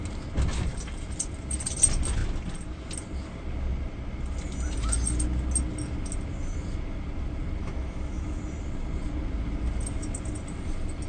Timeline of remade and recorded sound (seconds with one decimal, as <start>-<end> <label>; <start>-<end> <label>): 0.0-7.6 recorded; 7.6-8.4 remade; 8.4-11.1 recorded